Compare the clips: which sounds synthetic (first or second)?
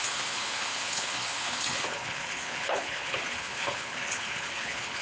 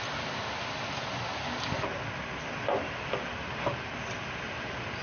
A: first